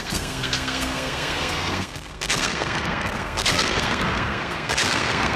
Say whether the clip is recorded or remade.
remade